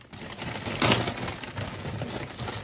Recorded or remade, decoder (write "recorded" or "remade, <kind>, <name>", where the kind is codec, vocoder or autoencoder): recorded